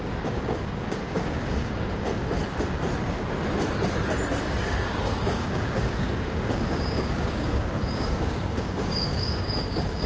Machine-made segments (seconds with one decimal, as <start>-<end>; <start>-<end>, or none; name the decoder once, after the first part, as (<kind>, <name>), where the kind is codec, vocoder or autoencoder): 0.0-2.1 (codec, DAC); 4.4-10.1